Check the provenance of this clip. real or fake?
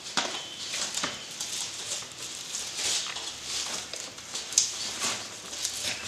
real